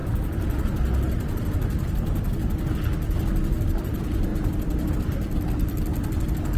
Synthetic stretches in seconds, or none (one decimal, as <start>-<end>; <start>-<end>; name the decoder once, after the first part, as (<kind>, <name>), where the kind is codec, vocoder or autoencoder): 3.8-4.3 (vocoder, BigVGAN v2); 4.9-6.6